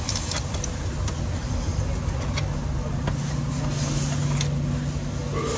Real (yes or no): yes